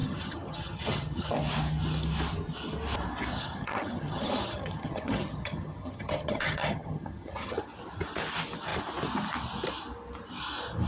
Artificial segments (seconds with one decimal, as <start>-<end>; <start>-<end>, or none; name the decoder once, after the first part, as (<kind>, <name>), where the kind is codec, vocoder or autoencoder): 0.0-1.3 (vocoder, HiFi-GAN); 3.3-7.6